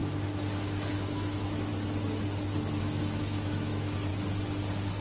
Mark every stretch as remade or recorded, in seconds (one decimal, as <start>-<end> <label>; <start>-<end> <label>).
0.0-0.9 recorded; 0.9-1.7 remade; 1.7-2.8 recorded; 2.8-4.1 remade; 4.1-5.0 recorded